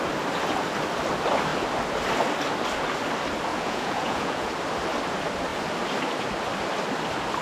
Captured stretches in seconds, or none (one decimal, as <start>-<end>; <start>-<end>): 0.0-3.5; 4.5-7.4